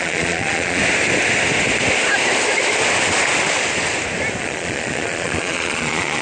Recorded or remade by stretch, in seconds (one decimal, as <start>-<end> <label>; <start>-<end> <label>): 0.0-0.8 remade; 0.8-4.4 recorded; 4.4-6.2 remade